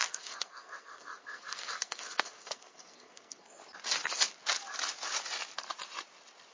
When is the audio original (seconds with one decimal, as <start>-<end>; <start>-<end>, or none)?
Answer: 3.6-6.5

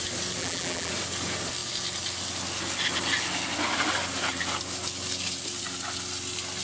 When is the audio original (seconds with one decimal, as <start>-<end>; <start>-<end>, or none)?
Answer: 0.0-0.4; 0.9-6.6